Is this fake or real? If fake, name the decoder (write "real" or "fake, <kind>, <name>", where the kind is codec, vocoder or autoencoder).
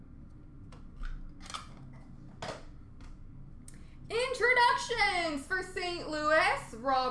real